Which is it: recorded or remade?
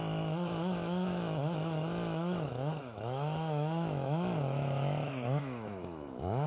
remade